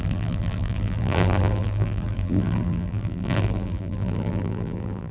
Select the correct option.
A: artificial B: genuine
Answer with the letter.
A